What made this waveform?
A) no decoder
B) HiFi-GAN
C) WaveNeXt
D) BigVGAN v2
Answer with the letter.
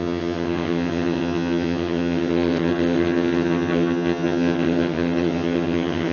B